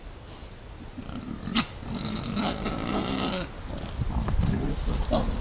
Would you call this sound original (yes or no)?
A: yes